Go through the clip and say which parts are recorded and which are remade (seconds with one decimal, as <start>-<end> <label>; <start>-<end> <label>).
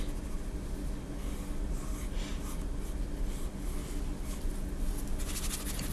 0.0-5.9 recorded